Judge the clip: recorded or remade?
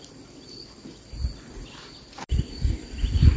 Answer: recorded